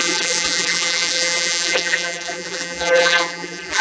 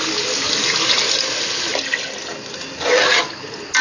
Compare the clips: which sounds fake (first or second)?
first